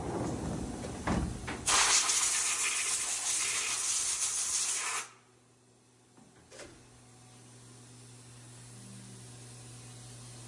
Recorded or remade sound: recorded